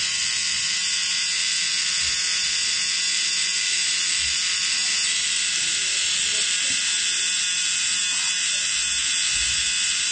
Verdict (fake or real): fake